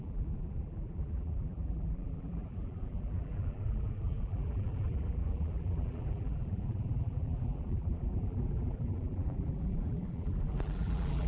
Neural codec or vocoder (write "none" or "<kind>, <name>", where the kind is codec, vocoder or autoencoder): vocoder, BigVGAN v2